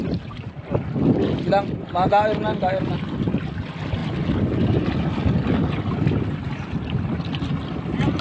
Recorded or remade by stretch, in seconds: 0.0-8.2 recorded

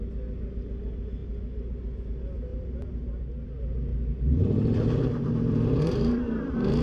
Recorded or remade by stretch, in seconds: 0.0-2.5 recorded; 2.5-6.8 remade

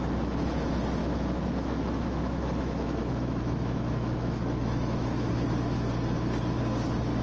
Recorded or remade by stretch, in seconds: 0.0-1.0 recorded; 1.0-5.3 remade; 5.3-7.2 recorded

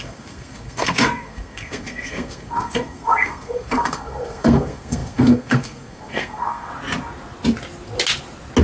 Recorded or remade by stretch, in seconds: 0.0-6.7 remade; 6.7-8.6 recorded

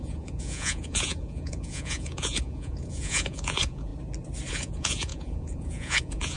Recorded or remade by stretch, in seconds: 0.0-3.9 remade; 3.9-4.5 recorded; 4.5-6.4 remade

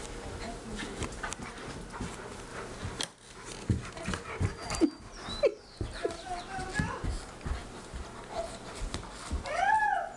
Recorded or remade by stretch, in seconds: 0.0-2.5 recorded; 2.5-3.0 remade; 3.0-5.5 recorded; 5.5-6.7 remade; 6.7-10.2 recorded